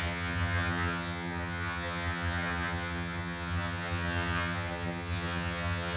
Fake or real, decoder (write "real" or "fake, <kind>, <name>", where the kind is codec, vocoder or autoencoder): fake, vocoder, HiFi-GAN